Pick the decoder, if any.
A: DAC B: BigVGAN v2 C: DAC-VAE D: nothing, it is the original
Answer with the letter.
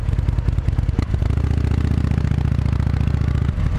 D